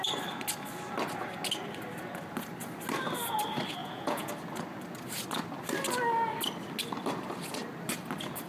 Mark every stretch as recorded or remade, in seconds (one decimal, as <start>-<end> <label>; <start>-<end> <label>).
0.0-3.8 recorded; 3.8-4.3 remade; 4.3-8.5 recorded